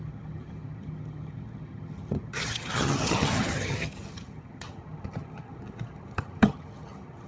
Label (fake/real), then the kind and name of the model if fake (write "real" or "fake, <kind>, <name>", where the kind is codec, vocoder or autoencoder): fake, vocoder, HiFi-GAN